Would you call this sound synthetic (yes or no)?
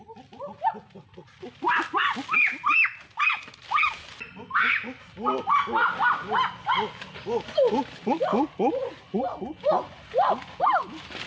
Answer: no